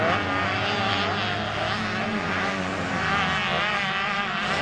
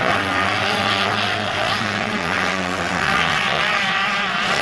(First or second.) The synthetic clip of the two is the second